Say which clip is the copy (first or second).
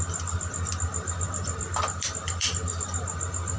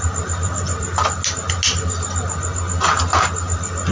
first